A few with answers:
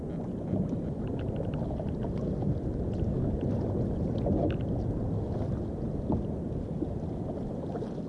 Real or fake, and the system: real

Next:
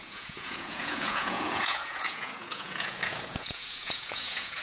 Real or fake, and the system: fake, vocoder, Vocos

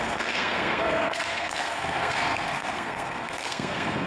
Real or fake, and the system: fake, codec, SNAC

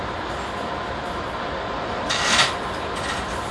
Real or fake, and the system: real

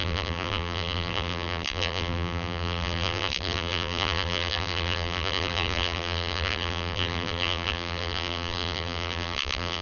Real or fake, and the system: fake, vocoder, BigVGAN v2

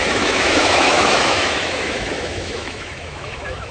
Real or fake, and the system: fake, autoencoder, DAC-VAE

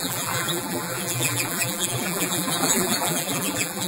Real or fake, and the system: fake, vocoder, BigVGAN v2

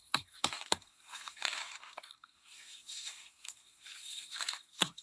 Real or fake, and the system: fake, codec, SNAC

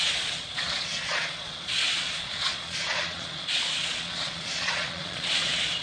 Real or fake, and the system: fake, vocoder, Vocos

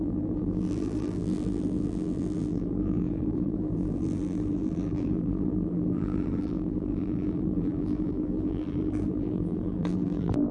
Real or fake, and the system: fake, vocoder, BigVGAN v2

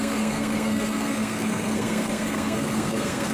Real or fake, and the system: fake, codec, SNAC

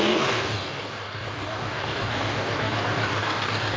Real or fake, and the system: fake, codec, DAC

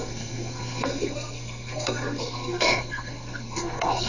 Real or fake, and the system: fake, codec, SNAC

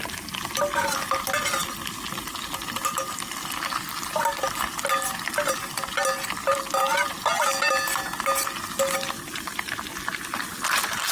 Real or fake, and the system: real